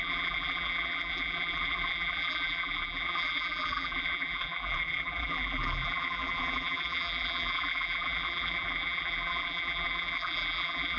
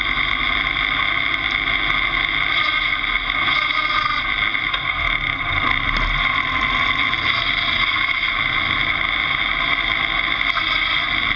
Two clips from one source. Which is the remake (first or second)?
first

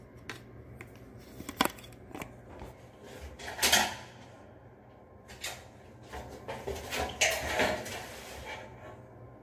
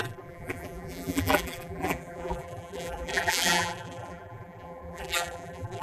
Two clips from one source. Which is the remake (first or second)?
second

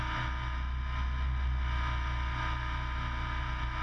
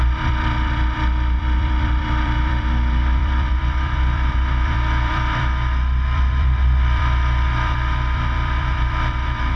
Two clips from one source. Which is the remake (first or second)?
second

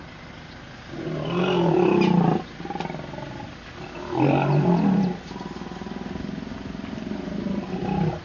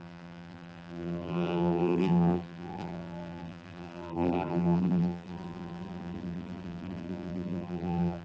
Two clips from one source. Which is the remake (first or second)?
second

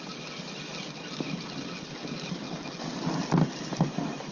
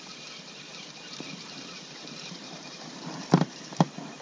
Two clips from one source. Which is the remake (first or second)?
second